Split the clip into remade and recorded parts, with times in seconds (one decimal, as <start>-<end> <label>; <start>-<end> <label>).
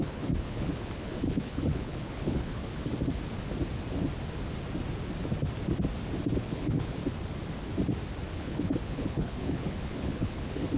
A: 0.0-2.9 remade; 2.9-6.4 recorded; 6.4-7.0 remade; 7.0-8.3 recorded; 8.3-10.8 remade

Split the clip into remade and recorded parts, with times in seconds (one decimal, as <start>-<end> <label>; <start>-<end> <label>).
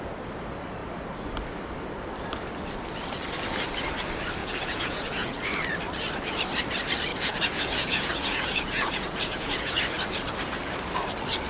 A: 0.0-4.4 recorded; 4.4-5.5 remade; 5.5-7.1 recorded; 7.1-9.8 remade; 9.8-11.5 recorded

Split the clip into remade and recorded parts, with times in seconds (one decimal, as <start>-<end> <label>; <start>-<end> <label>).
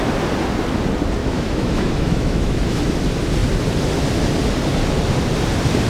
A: 0.0-1.2 recorded; 1.2-2.8 remade; 2.8-5.9 recorded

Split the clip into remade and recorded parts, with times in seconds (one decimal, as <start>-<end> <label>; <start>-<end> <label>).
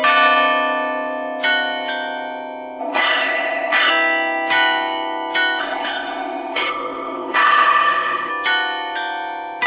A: 0.0-2.8 recorded; 2.8-3.9 remade; 3.9-5.6 recorded; 5.6-8.3 remade; 8.3-9.7 recorded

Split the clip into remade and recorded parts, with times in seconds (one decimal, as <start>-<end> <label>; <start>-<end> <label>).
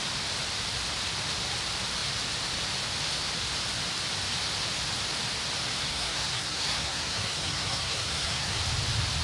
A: 0.0-5.8 recorded; 5.8-8.6 remade; 8.6-9.2 recorded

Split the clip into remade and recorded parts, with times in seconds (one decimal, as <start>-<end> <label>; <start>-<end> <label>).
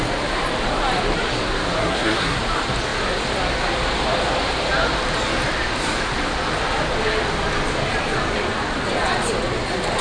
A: 0.0-1.8 recorded; 1.8-2.4 remade; 2.4-10.0 recorded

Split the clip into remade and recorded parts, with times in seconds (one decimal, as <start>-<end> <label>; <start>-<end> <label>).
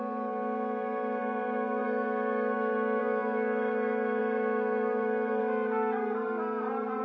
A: 0.0-7.0 remade